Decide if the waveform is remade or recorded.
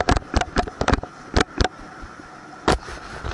remade